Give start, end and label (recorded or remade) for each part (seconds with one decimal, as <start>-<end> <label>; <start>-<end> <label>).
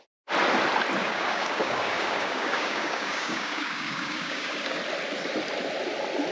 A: 0.0-1.0 recorded; 1.0-4.8 remade; 4.8-6.3 recorded